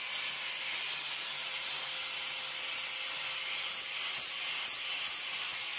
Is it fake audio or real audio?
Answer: real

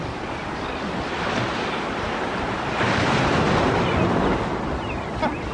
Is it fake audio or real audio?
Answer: real